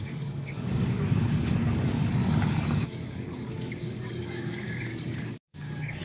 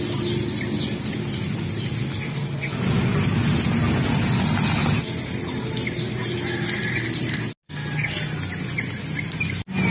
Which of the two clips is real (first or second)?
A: second